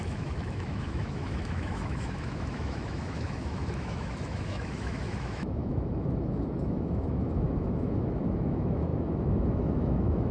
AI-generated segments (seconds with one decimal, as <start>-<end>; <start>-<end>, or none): 0.0-10.3